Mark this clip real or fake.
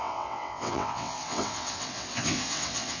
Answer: fake